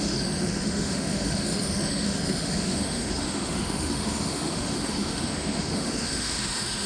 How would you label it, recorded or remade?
remade